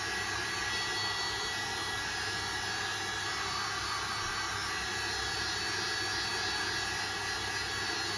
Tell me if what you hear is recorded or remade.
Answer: recorded